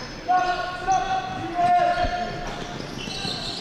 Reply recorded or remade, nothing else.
recorded